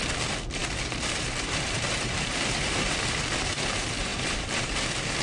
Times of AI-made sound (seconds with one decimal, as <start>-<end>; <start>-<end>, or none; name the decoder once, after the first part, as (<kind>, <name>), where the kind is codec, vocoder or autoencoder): 0.0-5.2 (vocoder, BigVGAN v2)